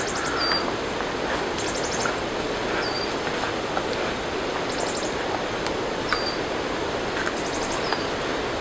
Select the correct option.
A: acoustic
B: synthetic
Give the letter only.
A